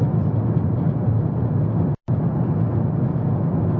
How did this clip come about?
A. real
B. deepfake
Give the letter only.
A